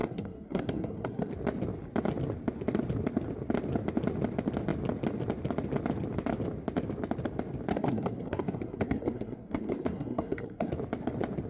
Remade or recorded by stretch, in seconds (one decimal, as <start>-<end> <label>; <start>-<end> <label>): 0.0-1.3 remade; 1.3-7.7 recorded; 7.7-10.7 remade; 10.7-11.5 recorded